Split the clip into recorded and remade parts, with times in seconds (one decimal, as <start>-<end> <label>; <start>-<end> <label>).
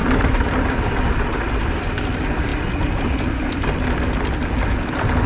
0.0-5.3 recorded